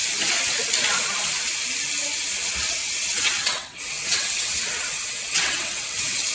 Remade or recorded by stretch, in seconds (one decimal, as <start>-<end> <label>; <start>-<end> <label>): 0.0-2.8 recorded; 2.8-6.3 remade